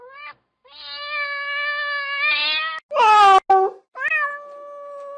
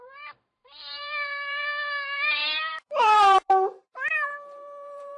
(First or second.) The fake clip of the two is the second